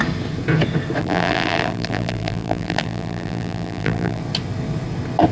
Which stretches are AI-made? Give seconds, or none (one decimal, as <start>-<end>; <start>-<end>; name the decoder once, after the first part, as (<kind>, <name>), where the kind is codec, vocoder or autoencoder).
1.0-4.2 (vocoder, BigVGAN v2)